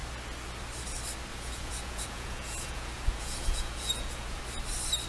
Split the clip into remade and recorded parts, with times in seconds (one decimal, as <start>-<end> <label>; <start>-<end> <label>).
0.0-1.3 recorded; 1.3-4.4 remade; 4.4-5.1 recorded